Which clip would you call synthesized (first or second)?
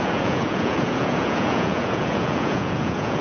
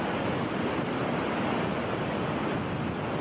first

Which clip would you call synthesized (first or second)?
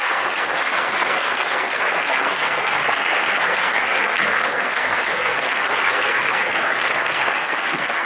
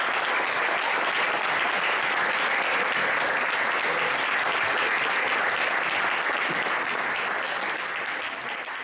first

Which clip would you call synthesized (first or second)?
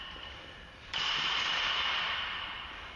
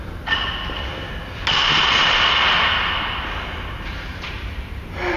first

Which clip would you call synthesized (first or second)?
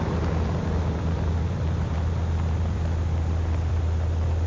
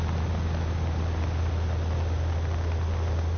first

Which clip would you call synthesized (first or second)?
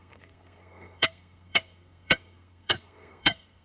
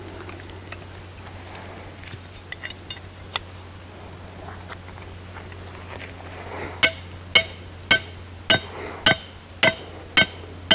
first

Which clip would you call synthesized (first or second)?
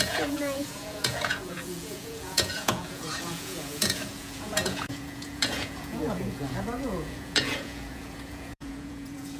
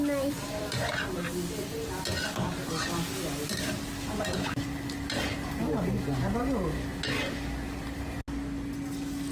first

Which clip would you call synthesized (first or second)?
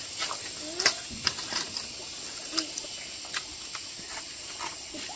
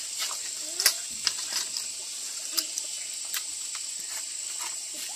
second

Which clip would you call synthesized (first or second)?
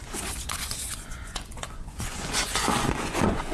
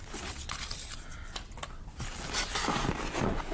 first